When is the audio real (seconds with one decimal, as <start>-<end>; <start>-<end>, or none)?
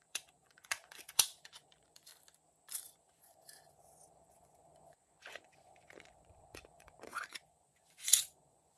2.1-2.8